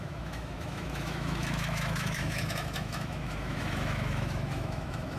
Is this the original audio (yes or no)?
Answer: no